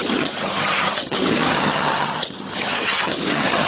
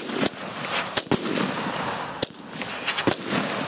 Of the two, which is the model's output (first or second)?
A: first